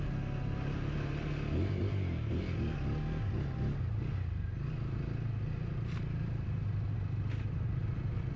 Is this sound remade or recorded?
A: recorded